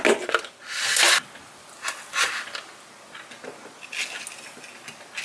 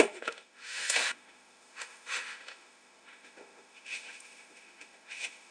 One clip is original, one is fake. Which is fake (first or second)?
second